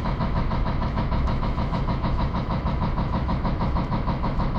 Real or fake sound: fake